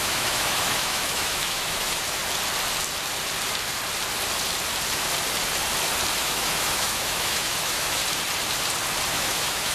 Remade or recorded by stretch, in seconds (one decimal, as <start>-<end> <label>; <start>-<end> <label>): 0.0-2.2 remade; 2.2-6.2 recorded; 6.2-8.0 remade; 8.0-9.1 recorded; 9.1-9.7 remade